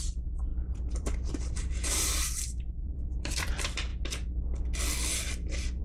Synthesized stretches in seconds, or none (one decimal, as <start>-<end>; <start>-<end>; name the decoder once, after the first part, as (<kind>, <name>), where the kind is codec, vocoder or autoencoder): 0.0-3.9 (vocoder, BigVGAN v2)